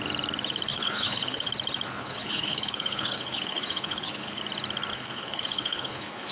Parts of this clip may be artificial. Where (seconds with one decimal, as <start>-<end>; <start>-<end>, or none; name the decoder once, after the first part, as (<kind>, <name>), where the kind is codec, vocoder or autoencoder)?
0.7-1.5 (codec, HILCodec); 2.0-4.4; 4.9-6.3